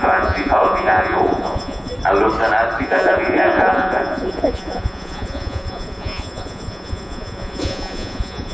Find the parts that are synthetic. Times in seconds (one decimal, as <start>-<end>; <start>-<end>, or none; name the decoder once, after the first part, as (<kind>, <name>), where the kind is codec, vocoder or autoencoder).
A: 0.0-1.9 (vocoder, Vocos); 2.8-8.5